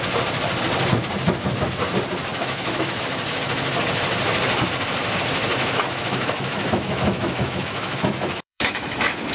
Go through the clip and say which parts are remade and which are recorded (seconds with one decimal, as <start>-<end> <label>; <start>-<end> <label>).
0.0-2.3 recorded; 2.3-3.0 remade; 3.0-5.5 recorded; 5.5-9.3 remade